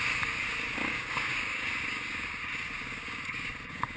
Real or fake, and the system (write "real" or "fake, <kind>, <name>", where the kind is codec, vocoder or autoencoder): fake, codec, DAC